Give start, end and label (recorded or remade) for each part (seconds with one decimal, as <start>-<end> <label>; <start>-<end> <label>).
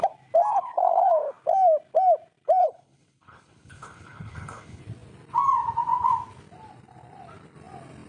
0.0-0.5 recorded; 0.5-1.1 remade; 1.1-2.6 recorded; 2.6-4.8 remade; 4.8-8.1 recorded